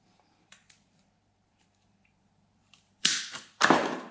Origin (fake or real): fake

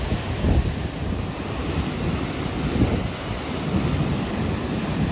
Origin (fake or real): real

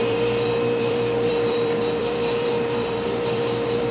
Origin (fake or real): fake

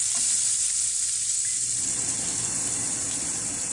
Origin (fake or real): fake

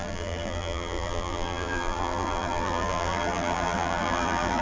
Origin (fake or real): fake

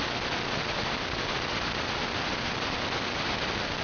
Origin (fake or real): real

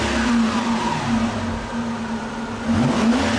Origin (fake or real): real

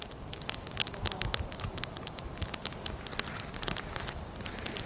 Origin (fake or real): fake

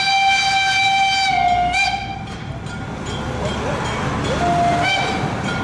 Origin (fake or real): real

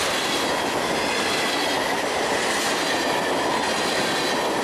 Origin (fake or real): real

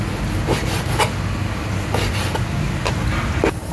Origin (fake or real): real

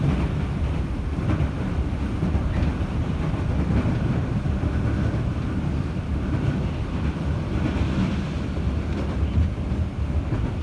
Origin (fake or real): real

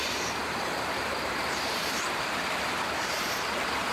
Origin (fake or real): fake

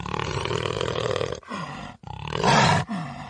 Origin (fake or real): fake